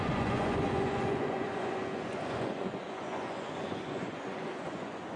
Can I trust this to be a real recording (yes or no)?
no